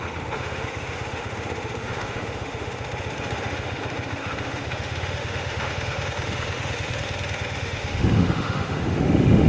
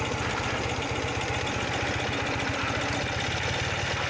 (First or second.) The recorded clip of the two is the second